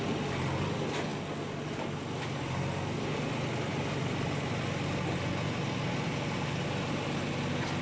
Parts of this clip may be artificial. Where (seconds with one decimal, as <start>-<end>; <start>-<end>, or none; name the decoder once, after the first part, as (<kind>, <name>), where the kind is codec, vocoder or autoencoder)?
3.7-4.5 (vocoder, BigVGAN v2)